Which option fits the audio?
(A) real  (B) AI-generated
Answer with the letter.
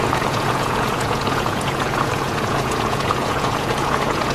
B